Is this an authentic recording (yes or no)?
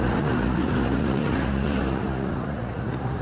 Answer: no